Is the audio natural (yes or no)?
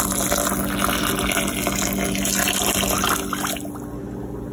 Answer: yes